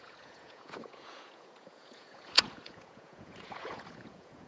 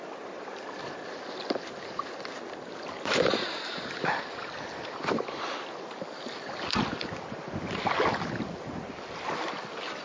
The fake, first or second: first